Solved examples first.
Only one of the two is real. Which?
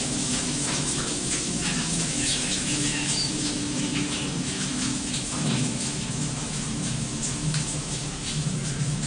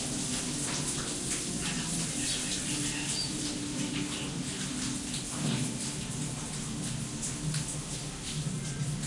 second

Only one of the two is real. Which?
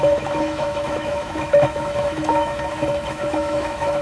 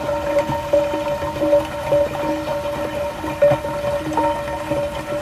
second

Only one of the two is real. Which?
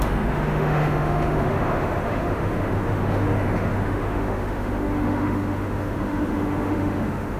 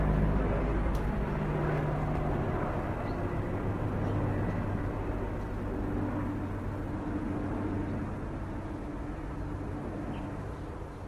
second